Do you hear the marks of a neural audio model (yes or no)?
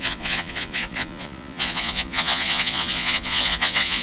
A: yes